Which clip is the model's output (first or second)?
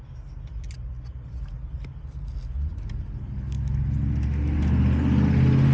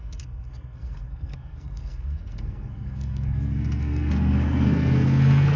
second